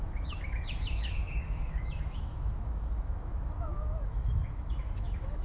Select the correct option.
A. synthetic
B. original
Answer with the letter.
A